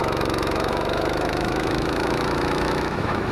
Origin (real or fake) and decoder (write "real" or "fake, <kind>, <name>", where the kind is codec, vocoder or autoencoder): fake, autoencoder, DAC-VAE